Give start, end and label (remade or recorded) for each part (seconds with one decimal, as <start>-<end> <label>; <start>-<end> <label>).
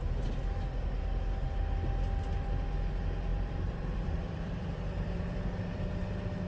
0.0-3.3 recorded; 3.3-5.9 remade; 5.9-6.5 recorded